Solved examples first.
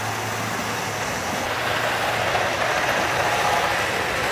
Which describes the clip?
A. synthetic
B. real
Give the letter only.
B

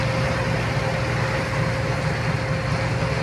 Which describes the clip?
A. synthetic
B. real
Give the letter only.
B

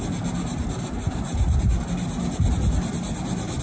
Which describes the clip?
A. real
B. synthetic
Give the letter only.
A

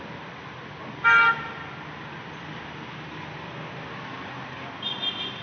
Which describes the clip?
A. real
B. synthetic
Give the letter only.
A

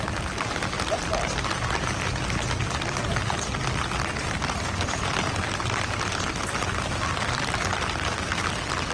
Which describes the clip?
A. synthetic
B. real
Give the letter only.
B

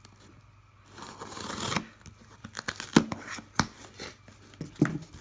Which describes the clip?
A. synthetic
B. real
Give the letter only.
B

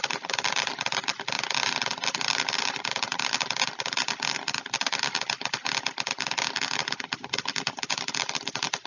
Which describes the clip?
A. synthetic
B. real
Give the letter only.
B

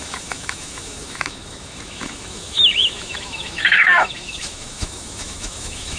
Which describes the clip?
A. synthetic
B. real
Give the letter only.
A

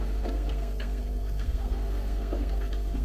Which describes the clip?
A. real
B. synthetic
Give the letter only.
B